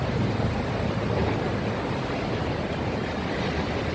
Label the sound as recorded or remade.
recorded